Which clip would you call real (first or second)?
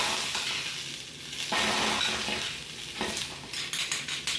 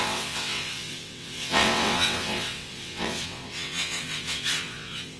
first